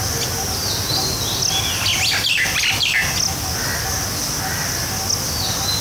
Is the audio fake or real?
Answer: real